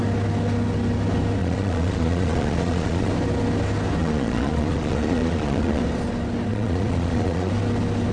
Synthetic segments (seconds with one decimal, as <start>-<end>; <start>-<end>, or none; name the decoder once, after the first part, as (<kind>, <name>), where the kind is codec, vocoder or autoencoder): 1.4-3.1 (vocoder, Vocos); 4.0-5.8; 6.5-7.5